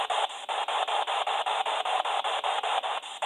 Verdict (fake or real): real